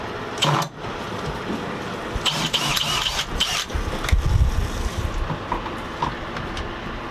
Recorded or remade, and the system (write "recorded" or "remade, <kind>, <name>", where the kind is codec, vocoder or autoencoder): recorded